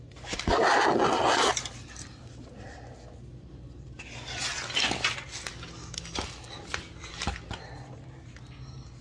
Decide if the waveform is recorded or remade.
recorded